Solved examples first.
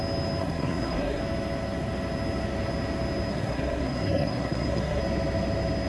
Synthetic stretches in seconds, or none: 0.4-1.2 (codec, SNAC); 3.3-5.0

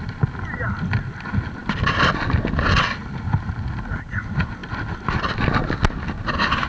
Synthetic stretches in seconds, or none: none

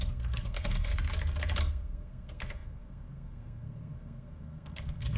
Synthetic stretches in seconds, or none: 0.0-0.9 (codec, SNAC); 1.6-5.2

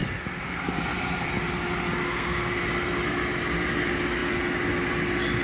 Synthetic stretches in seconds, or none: 2.0-2.6 (codec, SNAC)